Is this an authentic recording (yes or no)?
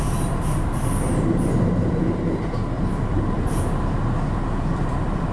no